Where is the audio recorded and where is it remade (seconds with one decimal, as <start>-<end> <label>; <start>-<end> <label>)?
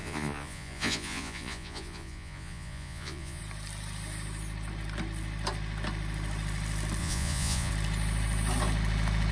0.0-3.4 remade; 3.4-7.0 recorded; 7.0-7.7 remade; 7.7-9.3 recorded